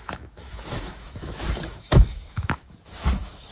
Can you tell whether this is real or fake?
fake